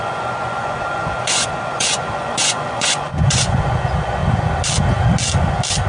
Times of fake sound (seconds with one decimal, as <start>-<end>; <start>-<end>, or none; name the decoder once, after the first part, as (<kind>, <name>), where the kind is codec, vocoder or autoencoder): 0.0-4.2 (vocoder, Vocos)